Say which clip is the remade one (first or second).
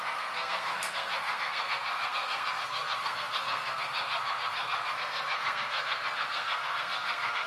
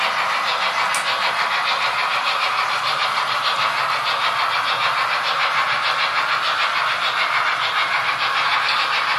first